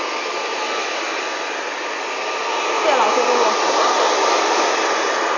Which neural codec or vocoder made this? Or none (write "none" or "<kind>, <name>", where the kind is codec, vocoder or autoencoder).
none